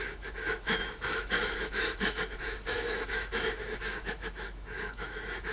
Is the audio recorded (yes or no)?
no